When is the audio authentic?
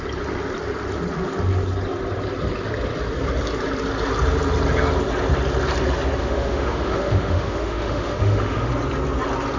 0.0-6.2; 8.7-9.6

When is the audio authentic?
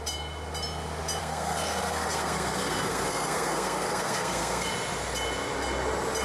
0.0-1.2; 4.7-6.2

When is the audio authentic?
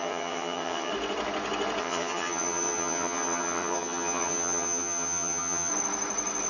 0.9-1.8; 5.7-6.5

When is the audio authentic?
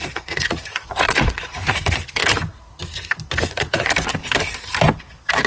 2.8-3.4; 4.1-5.5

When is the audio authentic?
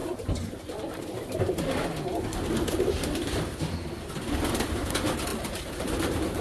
1.3-5.3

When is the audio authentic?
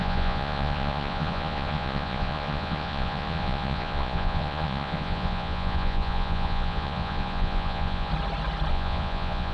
8.1-8.7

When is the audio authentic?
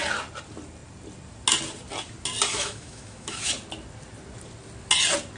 0.0-2.5; 3.5-5.4